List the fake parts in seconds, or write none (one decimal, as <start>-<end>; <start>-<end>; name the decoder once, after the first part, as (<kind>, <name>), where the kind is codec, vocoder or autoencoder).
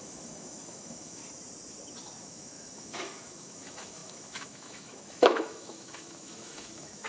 0.0-1.2 (autoencoder, DAC-VAE); 2.2-7.1